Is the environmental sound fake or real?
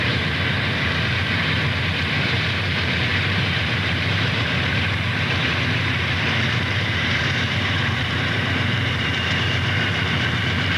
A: fake